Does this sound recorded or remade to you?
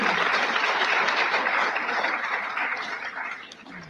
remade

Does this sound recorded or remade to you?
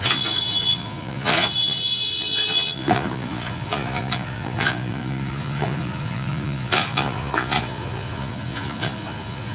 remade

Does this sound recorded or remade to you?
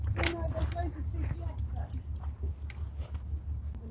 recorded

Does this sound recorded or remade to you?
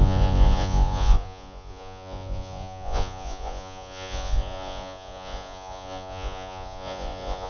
remade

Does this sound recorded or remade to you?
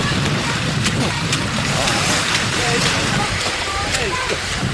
remade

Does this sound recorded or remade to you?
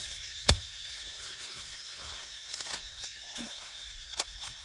remade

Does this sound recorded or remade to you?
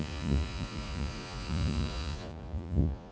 remade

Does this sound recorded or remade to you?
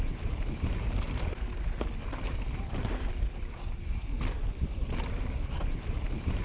recorded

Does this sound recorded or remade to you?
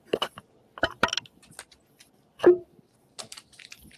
recorded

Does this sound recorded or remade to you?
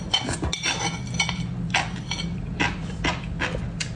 recorded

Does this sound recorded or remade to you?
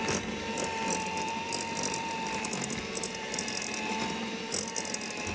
remade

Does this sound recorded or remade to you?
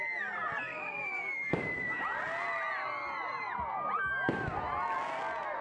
recorded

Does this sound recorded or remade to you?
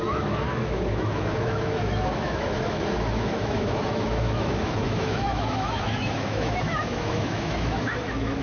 remade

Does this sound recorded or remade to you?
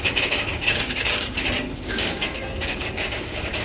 remade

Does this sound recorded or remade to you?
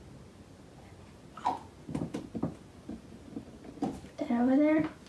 recorded